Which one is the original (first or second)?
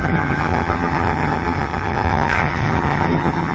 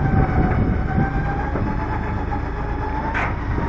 second